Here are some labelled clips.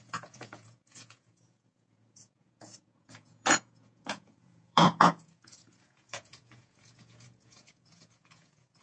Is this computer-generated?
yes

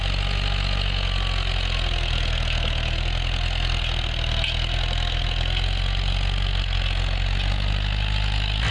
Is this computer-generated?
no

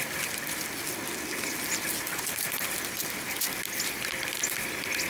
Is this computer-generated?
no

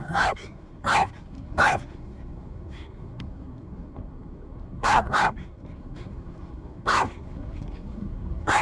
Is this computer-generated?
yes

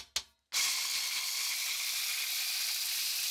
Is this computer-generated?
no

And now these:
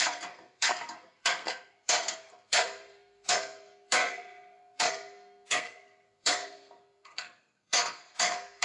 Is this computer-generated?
yes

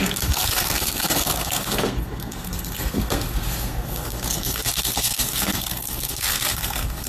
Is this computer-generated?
yes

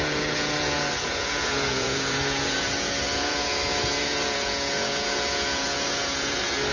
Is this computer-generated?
yes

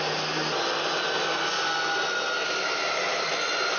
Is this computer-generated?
no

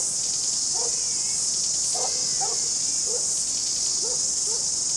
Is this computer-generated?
no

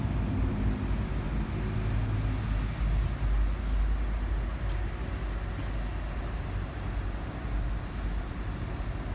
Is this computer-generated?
no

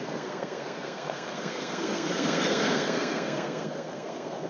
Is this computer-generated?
yes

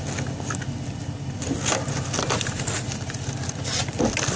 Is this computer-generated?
no